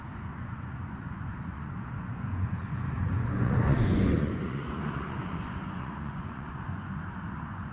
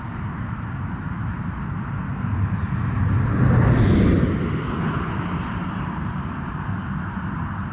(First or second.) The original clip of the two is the second